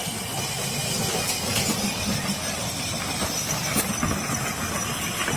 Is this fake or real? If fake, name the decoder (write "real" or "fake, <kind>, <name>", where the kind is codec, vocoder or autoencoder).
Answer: real